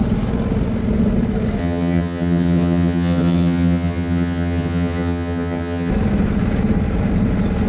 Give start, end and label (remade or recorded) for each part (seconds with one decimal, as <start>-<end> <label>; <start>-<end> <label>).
0.0-1.6 recorded; 1.6-5.9 remade; 5.9-7.7 recorded